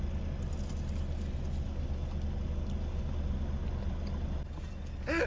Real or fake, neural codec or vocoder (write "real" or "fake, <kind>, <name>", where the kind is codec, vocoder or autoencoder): real